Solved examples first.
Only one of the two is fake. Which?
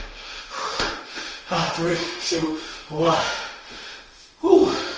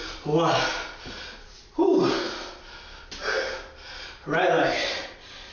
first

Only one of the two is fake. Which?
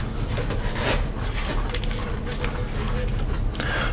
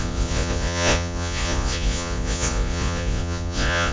second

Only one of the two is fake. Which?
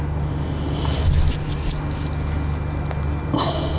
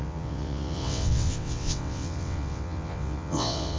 second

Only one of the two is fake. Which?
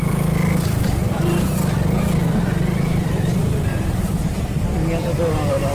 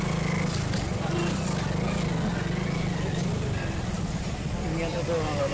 first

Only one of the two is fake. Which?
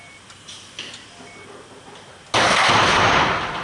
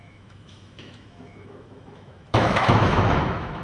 second